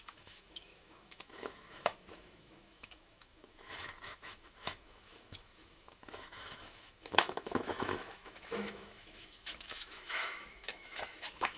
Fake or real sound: fake